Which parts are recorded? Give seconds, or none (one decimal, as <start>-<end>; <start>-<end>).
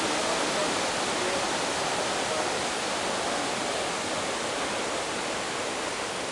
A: 0.0-6.3